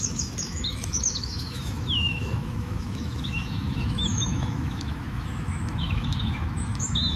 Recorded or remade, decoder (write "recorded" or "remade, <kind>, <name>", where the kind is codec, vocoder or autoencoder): remade, autoencoder, DAC-VAE